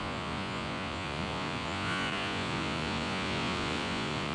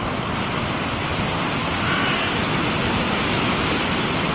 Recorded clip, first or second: second